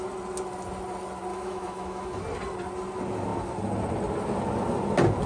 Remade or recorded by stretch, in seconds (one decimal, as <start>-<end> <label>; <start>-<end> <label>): 0.0-1.3 recorded; 1.3-2.2 remade; 2.2-5.3 recorded